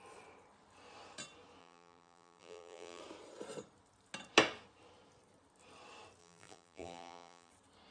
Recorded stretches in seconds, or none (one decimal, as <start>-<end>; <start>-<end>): 0.0-1.6; 3.0-6.2; 7.5-7.9